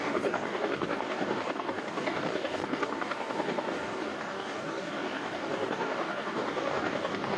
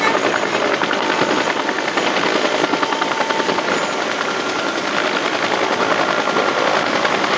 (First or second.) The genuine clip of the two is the second